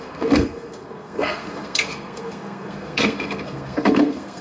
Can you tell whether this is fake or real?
fake